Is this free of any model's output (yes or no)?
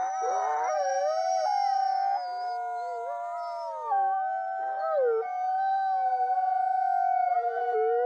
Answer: yes